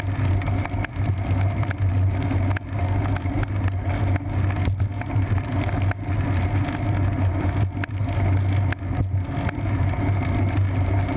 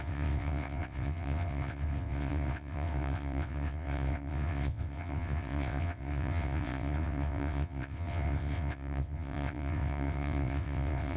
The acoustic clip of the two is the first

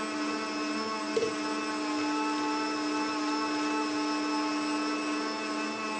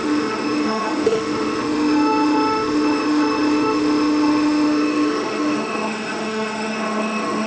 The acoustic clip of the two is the first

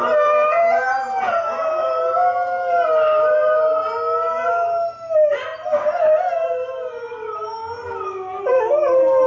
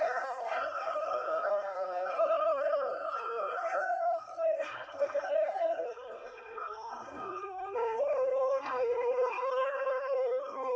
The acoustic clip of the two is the first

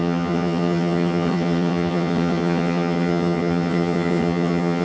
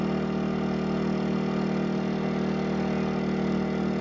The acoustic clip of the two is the second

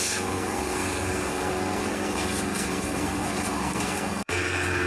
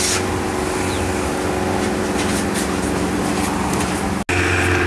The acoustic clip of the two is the second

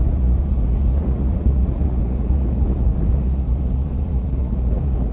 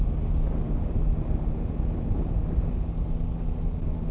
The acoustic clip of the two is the second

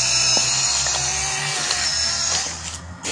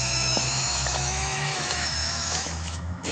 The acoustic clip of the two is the first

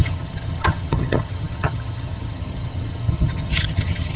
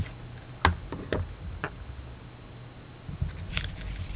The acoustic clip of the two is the second